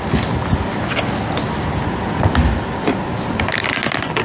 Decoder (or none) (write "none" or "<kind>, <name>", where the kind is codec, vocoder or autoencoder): none